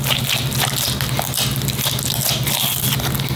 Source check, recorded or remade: recorded